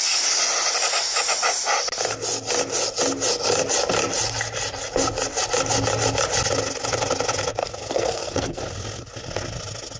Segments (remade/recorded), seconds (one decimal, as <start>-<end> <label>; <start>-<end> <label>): 0.0-7.6 recorded; 7.6-8.6 remade; 8.6-10.0 recorded